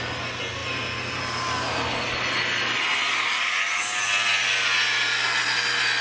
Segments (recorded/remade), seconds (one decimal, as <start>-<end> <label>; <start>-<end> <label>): 0.0-6.0 recorded